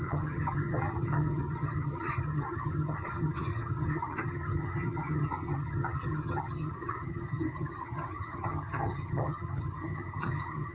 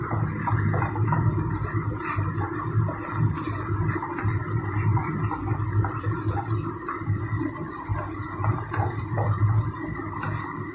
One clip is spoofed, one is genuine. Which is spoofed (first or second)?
first